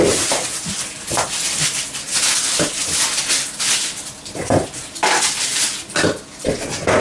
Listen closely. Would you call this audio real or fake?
real